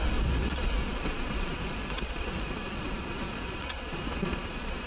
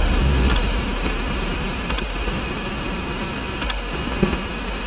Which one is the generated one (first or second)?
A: first